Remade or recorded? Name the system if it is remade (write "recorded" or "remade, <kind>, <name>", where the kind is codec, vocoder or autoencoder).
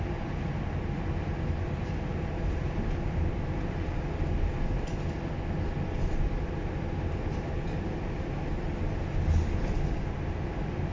recorded